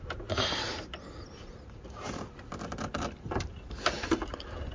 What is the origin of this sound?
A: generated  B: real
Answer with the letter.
B